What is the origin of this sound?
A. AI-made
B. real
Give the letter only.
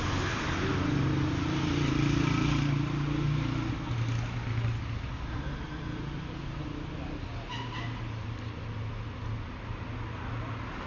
B